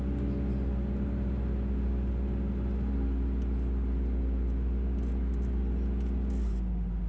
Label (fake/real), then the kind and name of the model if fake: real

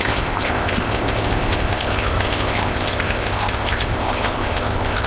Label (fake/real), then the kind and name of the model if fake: fake, codec, ZipCodec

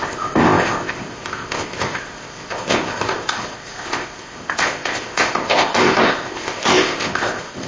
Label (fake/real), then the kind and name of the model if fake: fake, codec, ZipCodec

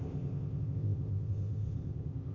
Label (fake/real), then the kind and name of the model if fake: fake, codec, ZipCodec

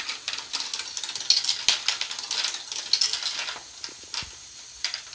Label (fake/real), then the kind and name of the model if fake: real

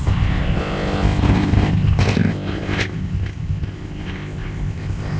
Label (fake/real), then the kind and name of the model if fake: fake, codec, ZipCodec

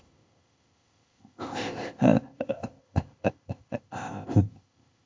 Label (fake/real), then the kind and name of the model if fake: fake, codec, ZipCodec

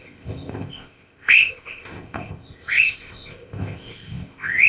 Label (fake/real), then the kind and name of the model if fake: fake, codec, ZipCodec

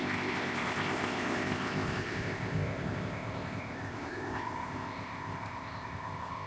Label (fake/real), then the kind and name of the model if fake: fake, codec, ZipCodec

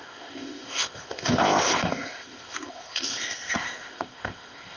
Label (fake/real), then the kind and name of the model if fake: fake, codec, ZipCodec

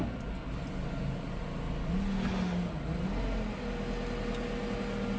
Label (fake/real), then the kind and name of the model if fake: real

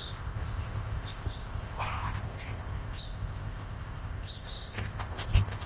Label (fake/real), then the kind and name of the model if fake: fake, codec, ZipCodec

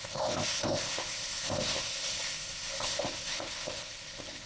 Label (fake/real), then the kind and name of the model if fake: fake, codec, ZipCodec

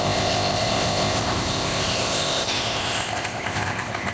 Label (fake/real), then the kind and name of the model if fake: fake, codec, ZipCodec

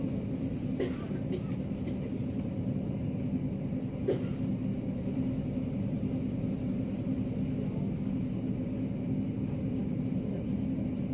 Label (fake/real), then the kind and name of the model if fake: real